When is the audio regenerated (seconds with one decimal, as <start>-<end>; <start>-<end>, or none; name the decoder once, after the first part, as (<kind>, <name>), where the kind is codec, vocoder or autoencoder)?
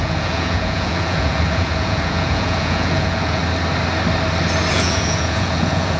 0.0-3.4 (vocoder, Vocos); 4.7-6.0